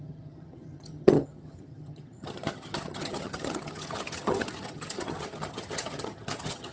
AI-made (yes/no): yes